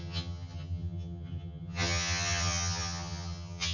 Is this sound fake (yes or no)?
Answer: yes